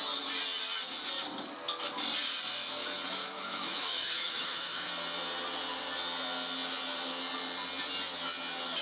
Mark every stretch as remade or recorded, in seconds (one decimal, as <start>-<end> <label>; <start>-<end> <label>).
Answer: 0.0-3.2 recorded; 3.2-4.9 remade; 4.9-8.8 recorded